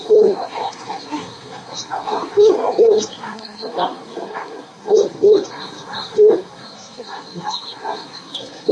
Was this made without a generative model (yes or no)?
no